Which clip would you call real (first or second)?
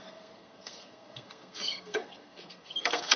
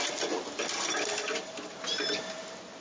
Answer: second